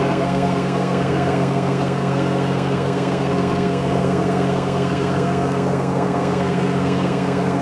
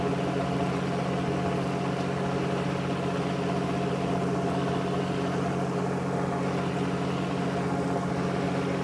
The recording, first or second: second